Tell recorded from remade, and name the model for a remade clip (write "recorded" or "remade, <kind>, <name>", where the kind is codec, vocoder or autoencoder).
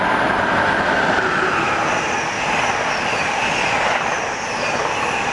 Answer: recorded